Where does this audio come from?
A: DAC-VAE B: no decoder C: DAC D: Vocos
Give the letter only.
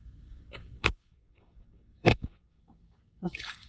C